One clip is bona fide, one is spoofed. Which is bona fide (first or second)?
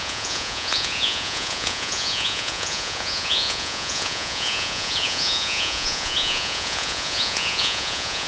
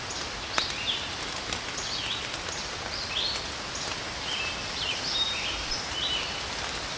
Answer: second